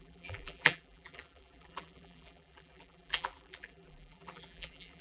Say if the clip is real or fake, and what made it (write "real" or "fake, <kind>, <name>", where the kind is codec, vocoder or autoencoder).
fake, vocoder, BigVGAN v2